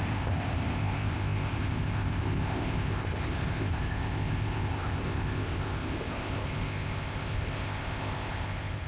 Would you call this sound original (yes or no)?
no